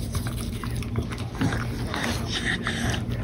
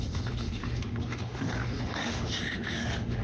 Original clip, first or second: first